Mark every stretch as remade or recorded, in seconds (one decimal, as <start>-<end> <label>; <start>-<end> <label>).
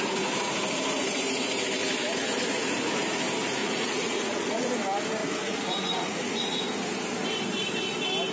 0.0-3.6 recorded; 3.6-4.7 remade; 4.7-5.2 recorded; 5.2-6.6 remade; 6.6-8.3 recorded